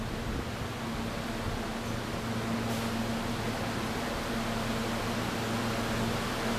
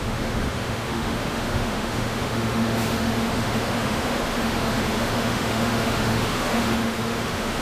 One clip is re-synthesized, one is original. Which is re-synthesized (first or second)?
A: second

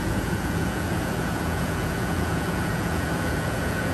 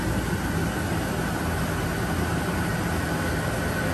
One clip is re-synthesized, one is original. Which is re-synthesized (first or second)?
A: first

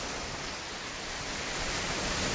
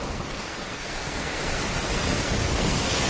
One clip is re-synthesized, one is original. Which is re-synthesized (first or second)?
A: second